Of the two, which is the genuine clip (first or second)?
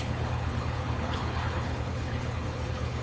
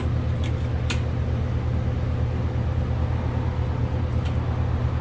second